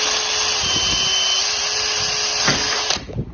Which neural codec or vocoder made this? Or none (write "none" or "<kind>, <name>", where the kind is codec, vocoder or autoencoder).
none